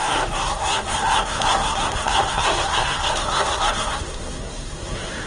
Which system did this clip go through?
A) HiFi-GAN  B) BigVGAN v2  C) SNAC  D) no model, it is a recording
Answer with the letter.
C